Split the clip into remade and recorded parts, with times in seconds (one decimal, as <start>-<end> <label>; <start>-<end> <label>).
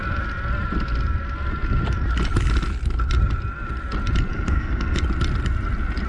0.0-4.3 recorded; 4.3-5.0 remade; 5.0-6.1 recorded